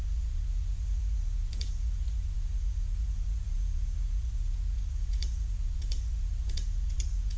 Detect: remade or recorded remade